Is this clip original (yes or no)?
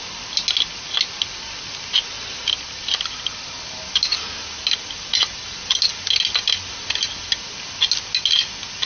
yes